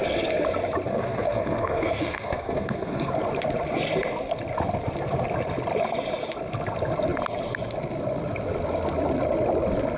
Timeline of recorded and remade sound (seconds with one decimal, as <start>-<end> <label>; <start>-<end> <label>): 0.0-0.9 recorded; 0.9-3.1 remade; 3.1-10.0 recorded